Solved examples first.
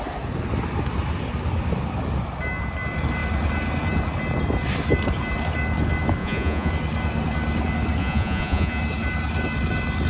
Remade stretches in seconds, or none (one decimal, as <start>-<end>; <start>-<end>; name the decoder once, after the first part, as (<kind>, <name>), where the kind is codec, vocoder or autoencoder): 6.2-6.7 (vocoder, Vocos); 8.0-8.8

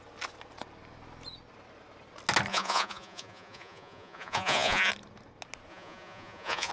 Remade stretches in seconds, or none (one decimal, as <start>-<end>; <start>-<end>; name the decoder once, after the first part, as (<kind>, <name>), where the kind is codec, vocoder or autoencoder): 2.5-4.9 (vocoder, Vocos); 5.7-6.7

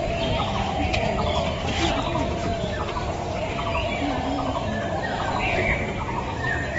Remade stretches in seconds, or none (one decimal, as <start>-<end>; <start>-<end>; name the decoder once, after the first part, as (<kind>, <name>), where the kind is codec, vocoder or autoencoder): none

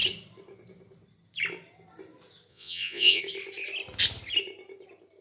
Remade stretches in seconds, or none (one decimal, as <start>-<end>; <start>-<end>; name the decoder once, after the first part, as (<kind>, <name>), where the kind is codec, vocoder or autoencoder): 2.5-3.2 (vocoder, Vocos)

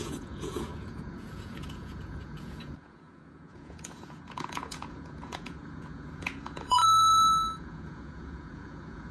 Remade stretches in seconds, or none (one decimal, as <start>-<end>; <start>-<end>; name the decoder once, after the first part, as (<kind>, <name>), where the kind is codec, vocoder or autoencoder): 0.0-9.1 (vocoder, Vocos)

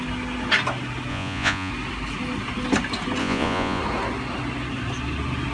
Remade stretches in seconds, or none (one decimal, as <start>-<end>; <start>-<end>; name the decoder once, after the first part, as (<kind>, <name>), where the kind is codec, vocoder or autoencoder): 1.1-1.7 (vocoder, Vocos); 3.2-3.8

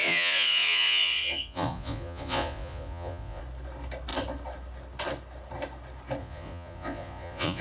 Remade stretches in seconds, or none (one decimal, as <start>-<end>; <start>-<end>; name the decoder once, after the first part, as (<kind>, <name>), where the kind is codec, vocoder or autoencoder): 0.0-3.4 (vocoder, Vocos); 6.2-7.6